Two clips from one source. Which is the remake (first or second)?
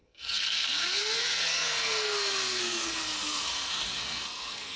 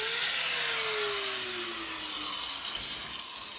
first